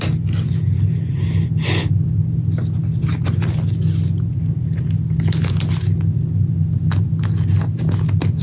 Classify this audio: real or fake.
real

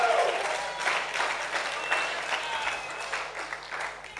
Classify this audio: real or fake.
real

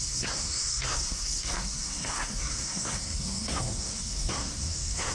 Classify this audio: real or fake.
fake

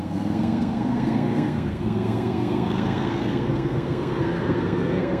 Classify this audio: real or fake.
fake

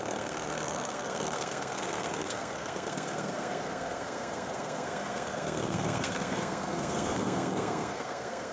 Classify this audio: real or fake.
fake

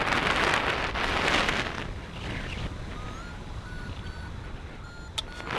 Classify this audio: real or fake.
real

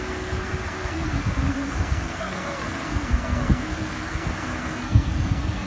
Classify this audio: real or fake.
fake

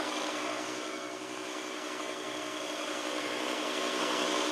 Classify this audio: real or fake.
fake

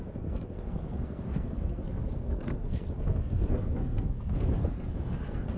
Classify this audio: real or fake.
fake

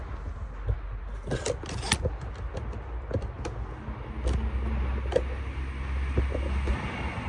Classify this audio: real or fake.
real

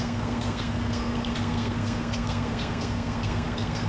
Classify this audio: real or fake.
fake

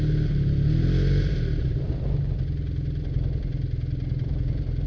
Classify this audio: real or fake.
real